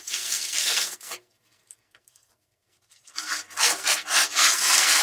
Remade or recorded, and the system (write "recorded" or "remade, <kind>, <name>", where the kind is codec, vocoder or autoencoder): remade, codec, SNAC